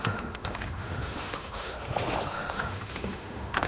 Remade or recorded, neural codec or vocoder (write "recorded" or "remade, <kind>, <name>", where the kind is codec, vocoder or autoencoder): remade, autoencoder, DAC-VAE